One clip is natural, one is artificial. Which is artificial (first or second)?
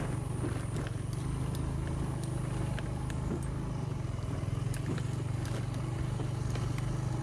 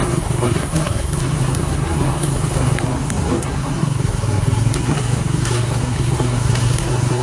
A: second